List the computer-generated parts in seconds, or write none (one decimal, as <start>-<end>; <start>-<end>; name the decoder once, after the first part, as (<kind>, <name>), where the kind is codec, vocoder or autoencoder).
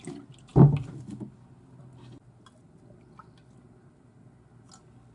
none